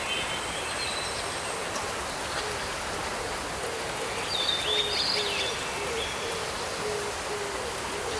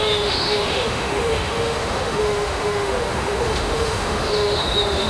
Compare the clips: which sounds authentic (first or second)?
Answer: first